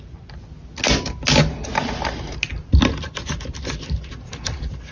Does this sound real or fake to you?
real